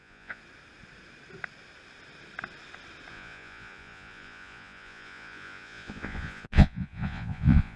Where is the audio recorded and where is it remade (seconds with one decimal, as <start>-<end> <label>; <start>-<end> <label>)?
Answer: 0.0-0.4 remade; 0.4-3.1 recorded; 3.1-7.8 remade